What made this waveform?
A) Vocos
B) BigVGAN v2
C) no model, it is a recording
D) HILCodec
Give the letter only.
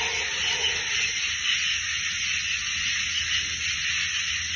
C